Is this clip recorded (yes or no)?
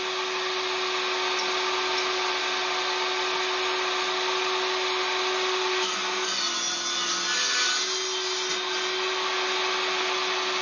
yes